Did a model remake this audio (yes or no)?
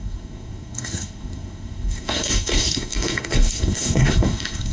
yes